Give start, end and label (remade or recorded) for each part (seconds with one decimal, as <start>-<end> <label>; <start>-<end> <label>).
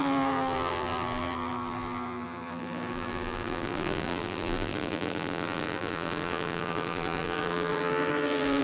0.0-8.6 remade